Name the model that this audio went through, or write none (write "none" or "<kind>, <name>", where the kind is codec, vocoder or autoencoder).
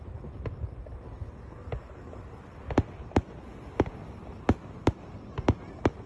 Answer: none